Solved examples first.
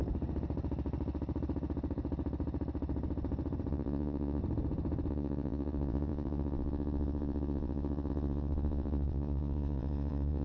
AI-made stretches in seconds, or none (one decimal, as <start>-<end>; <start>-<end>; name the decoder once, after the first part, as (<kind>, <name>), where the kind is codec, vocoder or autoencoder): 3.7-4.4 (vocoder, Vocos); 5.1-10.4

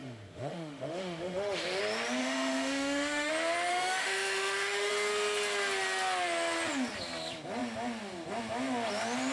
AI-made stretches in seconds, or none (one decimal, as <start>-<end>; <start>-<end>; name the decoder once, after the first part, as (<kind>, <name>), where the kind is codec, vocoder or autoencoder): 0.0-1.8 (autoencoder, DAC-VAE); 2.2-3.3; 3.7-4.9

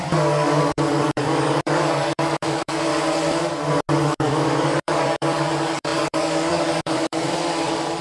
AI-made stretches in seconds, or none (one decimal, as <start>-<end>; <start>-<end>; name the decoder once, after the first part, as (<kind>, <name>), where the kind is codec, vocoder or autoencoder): 0.0-2.9 (codec, DAC); 4.0-8.0